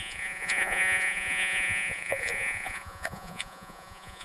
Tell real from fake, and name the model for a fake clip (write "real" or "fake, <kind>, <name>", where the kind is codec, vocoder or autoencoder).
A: fake, vocoder, Vocos